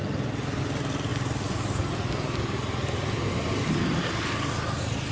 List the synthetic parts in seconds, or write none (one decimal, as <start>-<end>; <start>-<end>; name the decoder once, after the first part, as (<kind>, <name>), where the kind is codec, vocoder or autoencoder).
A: none